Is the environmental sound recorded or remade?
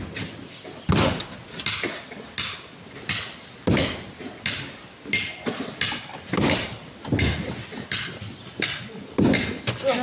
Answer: recorded